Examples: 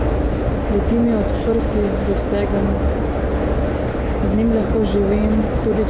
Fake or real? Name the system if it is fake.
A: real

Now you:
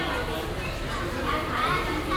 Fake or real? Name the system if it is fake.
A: real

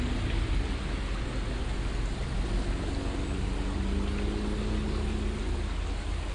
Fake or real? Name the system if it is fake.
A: real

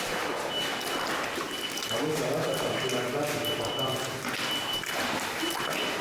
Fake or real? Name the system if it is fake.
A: real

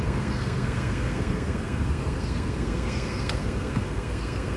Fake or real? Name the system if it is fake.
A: fake, codec, SNAC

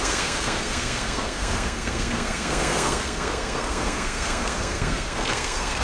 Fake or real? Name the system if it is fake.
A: fake, codec, SNAC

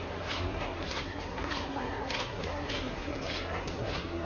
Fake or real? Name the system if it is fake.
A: fake, codec, SNAC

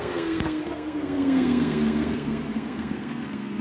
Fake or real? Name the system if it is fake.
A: fake, codec, SNAC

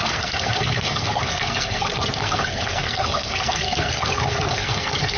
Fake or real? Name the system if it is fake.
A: fake, codec, SNAC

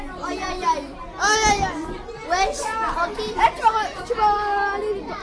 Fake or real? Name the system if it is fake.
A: real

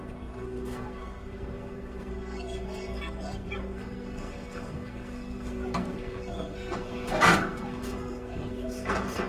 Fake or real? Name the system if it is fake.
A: fake, codec, SNAC